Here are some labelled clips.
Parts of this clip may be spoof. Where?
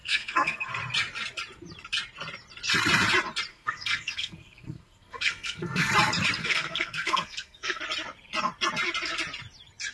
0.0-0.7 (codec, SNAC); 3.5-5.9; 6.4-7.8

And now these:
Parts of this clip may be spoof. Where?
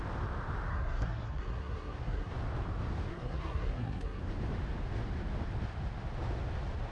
0.7-2.3 (codec, SNAC); 3.1-4.2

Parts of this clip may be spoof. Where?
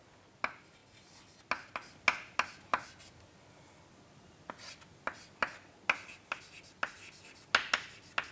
none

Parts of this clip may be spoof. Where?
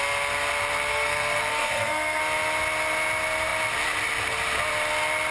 0.9-2.2 (codec, SNAC)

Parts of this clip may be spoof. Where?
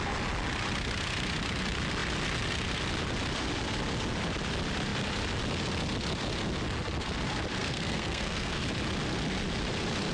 7.6-8.6 (codec, SNAC)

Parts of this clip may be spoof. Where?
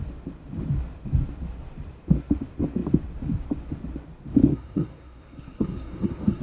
4.5-6.4 (codec, SNAC)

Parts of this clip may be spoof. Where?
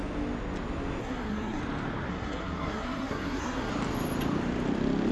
1.0-1.6 (codec, SNAC); 2.1-3.7